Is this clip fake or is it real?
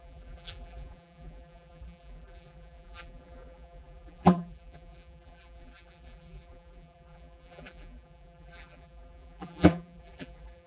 fake